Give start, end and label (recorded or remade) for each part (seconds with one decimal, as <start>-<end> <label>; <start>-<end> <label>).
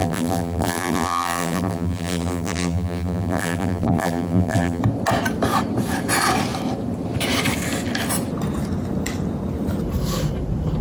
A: 0.0-4.8 remade; 4.8-10.8 recorded